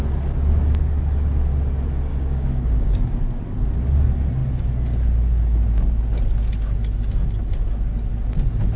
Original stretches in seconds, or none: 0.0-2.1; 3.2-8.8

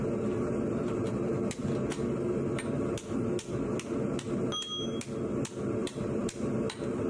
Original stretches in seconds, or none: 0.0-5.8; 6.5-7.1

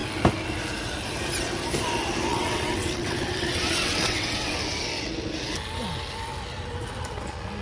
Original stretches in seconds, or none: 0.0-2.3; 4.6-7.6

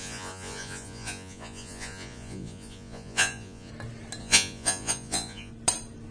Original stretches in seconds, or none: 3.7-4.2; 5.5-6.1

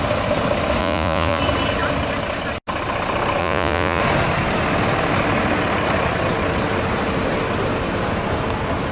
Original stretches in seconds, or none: 0.0-0.8; 1.4-3.4; 4.0-8.9

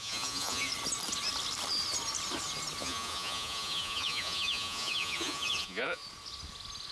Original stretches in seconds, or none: 0.7-2.8; 6.0-6.9